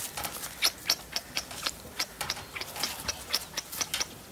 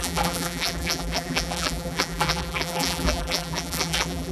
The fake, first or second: second